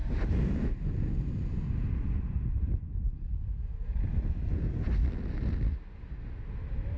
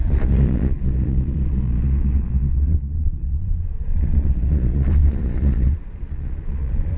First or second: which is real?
first